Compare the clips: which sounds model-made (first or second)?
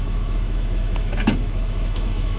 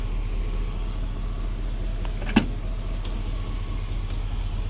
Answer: first